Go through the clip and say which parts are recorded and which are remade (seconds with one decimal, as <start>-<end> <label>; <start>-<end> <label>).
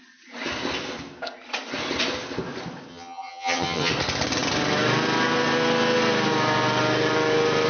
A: 0.0-2.9 recorded; 2.9-3.9 remade; 3.9-7.7 recorded